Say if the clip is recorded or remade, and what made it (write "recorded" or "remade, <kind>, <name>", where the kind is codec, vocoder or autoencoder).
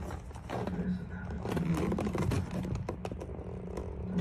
recorded